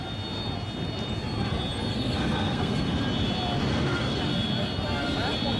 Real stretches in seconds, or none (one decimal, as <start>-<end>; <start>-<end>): 0.0-1.9; 3.0-3.7; 4.2-5.6